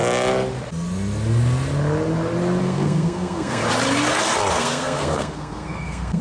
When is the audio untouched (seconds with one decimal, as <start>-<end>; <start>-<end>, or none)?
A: 0.0-2.6; 3.6-4.5